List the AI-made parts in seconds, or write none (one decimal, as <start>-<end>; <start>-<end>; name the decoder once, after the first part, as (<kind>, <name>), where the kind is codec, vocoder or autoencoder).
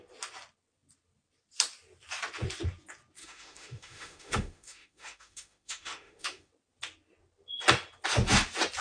3.2-6.5 (autoencoder, DAC-VAE)